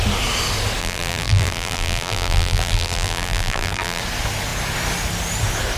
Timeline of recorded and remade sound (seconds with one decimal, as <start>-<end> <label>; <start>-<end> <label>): 0.0-0.8 recorded; 0.8-4.0 remade; 4.0-5.8 recorded